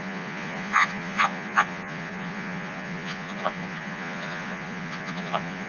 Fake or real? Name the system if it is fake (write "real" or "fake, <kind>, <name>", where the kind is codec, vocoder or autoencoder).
fake, vocoder, Vocos